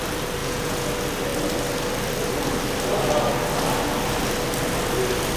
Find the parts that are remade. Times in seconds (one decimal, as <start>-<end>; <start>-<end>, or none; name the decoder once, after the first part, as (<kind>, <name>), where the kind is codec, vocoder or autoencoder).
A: 0.4-0.9 (vocoder, Vocos)